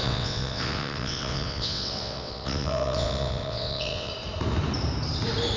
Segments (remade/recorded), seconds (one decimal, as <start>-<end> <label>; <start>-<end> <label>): 0.0-4.1 remade; 4.1-5.6 recorded